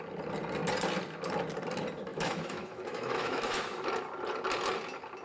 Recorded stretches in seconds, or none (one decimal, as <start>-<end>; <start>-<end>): 0.0-2.1; 3.6-5.2

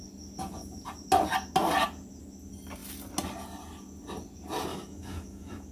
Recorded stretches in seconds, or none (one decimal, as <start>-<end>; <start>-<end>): 0.0-4.7

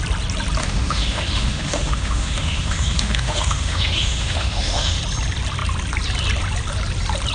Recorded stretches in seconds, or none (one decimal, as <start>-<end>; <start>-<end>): 0.0-0.6; 5.0-7.3

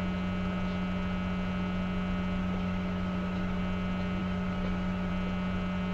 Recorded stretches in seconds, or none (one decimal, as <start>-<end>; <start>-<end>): 0.0-2.4; 3.6-4.2; 5.1-5.9

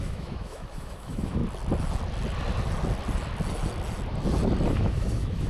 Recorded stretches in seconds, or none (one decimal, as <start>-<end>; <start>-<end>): 1.4-4.7

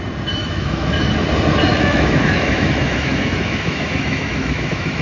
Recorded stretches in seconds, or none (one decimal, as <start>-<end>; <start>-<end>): 0.0-0.4; 1.1-1.7

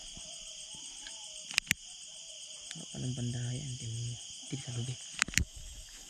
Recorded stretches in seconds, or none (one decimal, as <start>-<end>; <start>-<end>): 0.0-5.4